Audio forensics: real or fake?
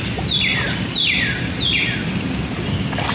real